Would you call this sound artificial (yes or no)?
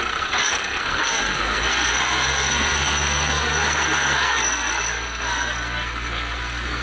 yes